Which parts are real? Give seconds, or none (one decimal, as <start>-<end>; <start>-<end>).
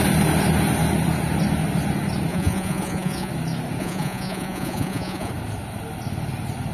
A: 0.0-2.3; 3.3-3.8; 5.3-6.7